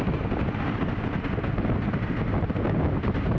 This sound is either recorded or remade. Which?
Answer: recorded